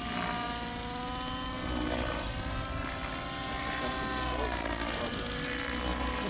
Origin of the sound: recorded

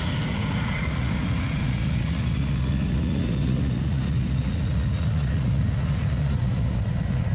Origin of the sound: remade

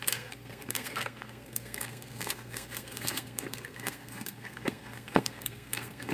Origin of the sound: remade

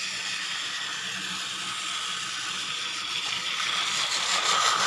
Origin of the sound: recorded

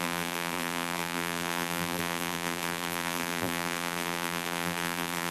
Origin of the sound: remade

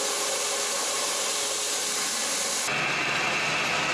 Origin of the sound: recorded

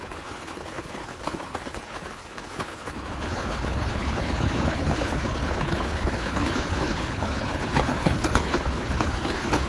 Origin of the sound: remade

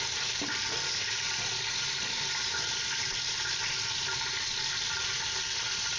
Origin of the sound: recorded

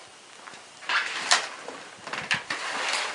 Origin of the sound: recorded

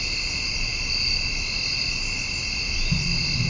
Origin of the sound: recorded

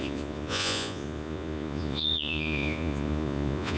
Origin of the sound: remade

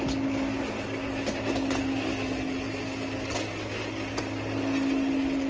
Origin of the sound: recorded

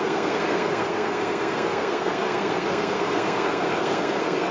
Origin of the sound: remade